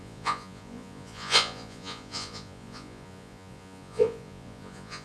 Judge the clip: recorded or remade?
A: remade